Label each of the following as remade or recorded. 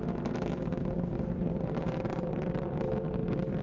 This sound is remade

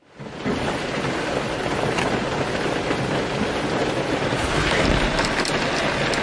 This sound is recorded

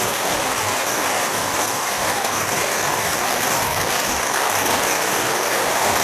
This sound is remade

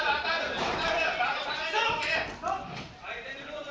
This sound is remade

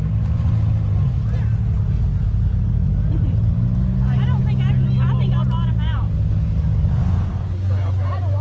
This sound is recorded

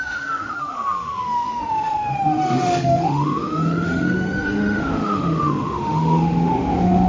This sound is remade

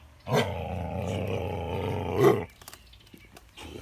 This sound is recorded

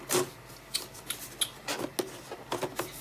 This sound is recorded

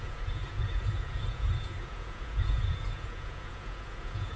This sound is remade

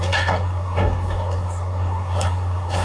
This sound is remade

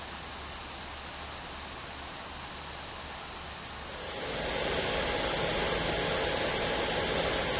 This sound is recorded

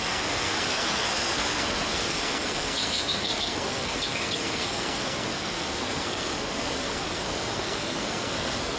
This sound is remade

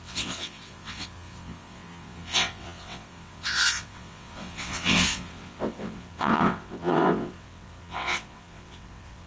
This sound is remade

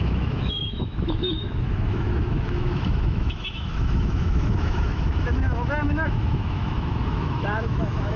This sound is remade